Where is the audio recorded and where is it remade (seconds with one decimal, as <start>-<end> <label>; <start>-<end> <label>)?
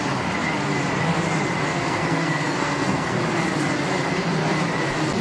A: 0.0-1.7 recorded; 1.7-3.2 remade; 3.2-5.2 recorded